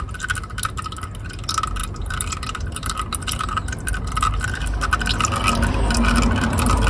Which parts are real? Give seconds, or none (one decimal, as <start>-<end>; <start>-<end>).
0.0-1.8; 4.3-6.9